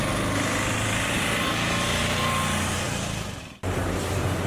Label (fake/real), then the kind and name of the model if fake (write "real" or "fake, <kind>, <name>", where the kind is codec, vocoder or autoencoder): real